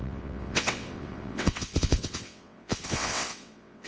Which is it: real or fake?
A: fake